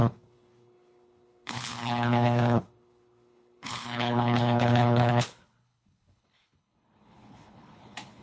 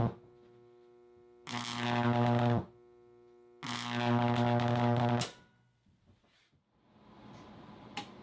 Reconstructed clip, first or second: first